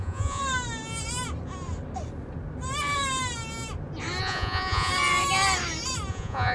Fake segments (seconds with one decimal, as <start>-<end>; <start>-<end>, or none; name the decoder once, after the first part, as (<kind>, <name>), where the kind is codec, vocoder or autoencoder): 0.0-0.4 (vocoder, Vocos); 4.2-4.9; 6.1-6.5